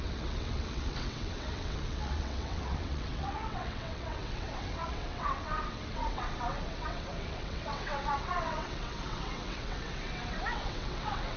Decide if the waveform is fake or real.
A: fake